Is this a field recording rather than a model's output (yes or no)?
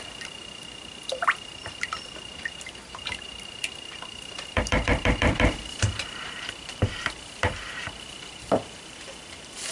no